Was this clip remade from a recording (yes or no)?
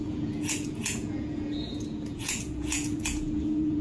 yes